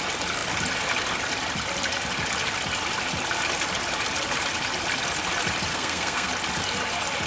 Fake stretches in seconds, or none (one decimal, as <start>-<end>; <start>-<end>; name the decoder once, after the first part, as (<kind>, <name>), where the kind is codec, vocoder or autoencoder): 5.7-6.3 (codec, SNAC)